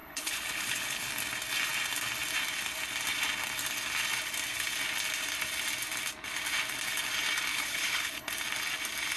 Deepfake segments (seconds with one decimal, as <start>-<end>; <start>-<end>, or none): 0.0-1.1; 7.5-8.3